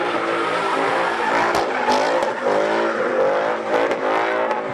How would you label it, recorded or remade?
recorded